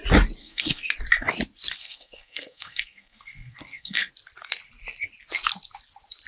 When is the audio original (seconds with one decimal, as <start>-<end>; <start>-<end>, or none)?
0.0-0.4; 0.9-1.8; 4.1-6.3